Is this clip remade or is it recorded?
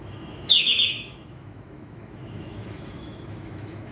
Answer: remade